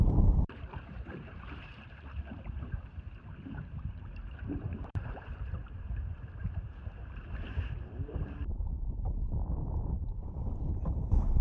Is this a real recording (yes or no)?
no